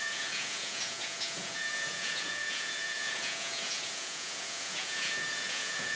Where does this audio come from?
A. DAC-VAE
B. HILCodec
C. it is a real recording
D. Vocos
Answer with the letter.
D